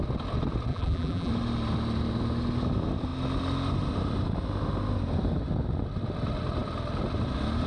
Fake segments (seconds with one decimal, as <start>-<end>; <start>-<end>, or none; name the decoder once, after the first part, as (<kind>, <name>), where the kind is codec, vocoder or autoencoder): 0.7-1.3 (vocoder, BigVGAN v2)